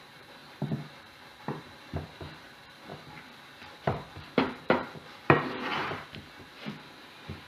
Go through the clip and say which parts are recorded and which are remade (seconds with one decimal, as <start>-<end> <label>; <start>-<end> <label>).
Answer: 0.0-7.5 remade

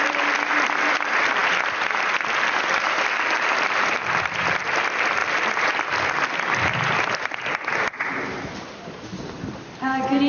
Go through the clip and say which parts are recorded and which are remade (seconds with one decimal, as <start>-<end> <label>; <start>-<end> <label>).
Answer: 0.0-1.4 remade; 1.4-3.0 recorded; 3.0-5.2 remade; 5.2-7.2 recorded; 7.2-10.3 remade